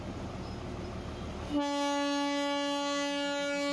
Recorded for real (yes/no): yes